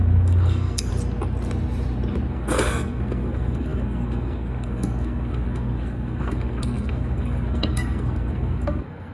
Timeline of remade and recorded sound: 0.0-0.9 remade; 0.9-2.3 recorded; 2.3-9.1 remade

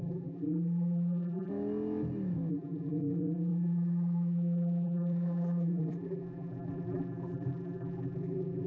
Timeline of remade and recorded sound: 0.0-1.5 remade; 1.5-2.5 recorded; 2.5-8.7 remade

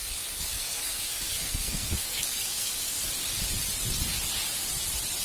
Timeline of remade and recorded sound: 0.0-3.1 remade; 3.1-5.2 recorded

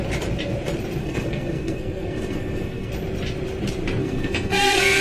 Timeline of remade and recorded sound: 0.0-1.0 recorded; 1.0-2.9 remade; 2.9-4.0 recorded; 4.0-5.0 remade

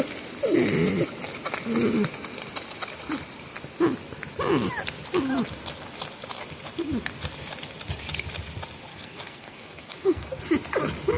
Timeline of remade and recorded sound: 0.0-8.9 recorded; 8.9-10.4 remade; 10.4-11.2 recorded

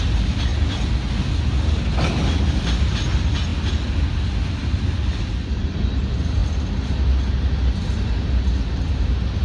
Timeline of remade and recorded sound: 0.0-9.4 recorded

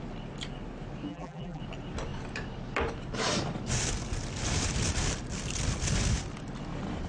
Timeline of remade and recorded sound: 0.0-1.1 recorded; 1.1-1.6 remade; 1.6-7.1 recorded

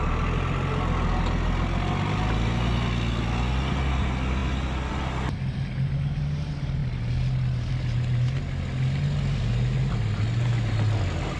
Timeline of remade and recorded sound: 0.0-11.4 recorded